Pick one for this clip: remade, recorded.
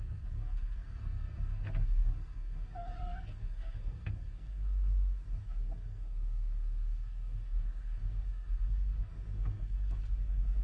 remade